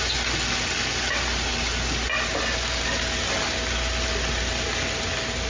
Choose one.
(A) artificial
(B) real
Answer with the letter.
B